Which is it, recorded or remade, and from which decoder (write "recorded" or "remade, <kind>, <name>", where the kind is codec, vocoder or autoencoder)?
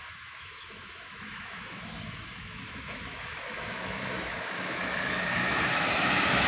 remade, autoencoder, DAC-VAE